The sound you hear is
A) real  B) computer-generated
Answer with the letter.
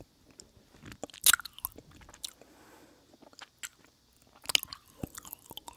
A